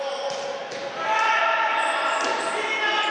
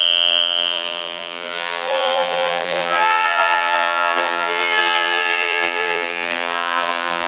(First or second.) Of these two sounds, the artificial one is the second